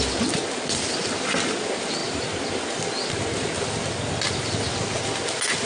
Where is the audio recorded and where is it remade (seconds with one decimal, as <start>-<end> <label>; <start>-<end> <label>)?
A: 0.0-5.7 recorded